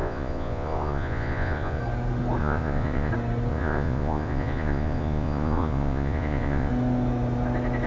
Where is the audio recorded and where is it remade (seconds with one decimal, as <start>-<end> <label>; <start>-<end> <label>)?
0.0-1.8 remade; 1.8-2.4 recorded; 2.4-3.1 remade; 3.1-3.5 recorded; 3.5-6.7 remade; 6.7-7.9 recorded